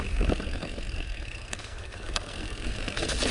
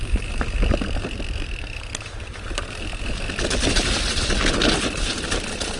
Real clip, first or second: second